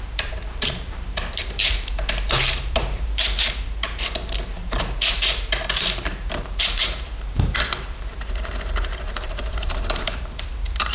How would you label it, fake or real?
fake